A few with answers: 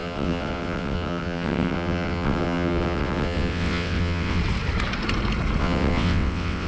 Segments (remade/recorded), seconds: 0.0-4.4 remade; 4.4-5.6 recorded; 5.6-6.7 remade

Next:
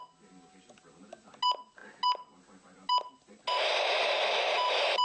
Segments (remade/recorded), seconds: 0.0-5.0 recorded

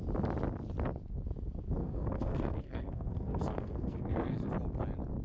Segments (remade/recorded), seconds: 0.0-1.8 recorded; 1.8-4.5 remade; 4.5-5.2 recorded

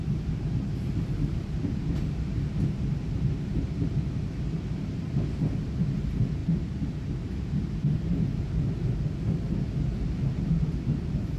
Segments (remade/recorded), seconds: 0.0-11.4 recorded

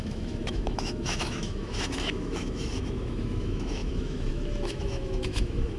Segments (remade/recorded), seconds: 0.0-5.8 remade

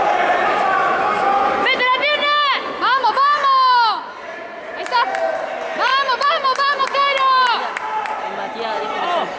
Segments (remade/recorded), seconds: 0.0-9.4 recorded

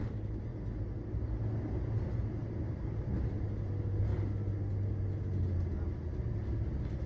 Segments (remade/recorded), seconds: 0.0-0.5 remade; 0.5-1.7 recorded; 1.7-4.1 remade; 4.1-6.4 recorded; 6.4-7.1 remade

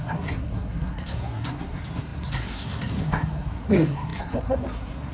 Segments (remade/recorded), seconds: 0.0-5.1 remade